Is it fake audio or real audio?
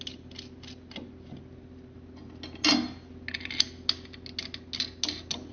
real